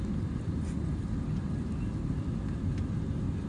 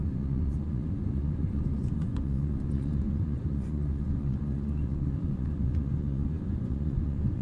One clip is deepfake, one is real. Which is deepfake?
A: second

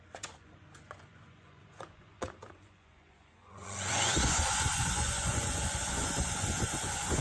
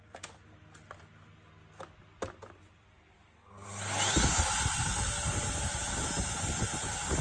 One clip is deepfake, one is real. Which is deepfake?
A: first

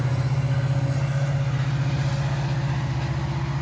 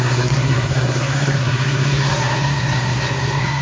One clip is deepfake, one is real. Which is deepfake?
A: second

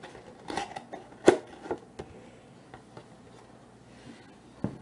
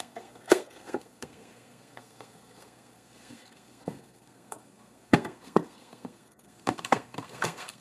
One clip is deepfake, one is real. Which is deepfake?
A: second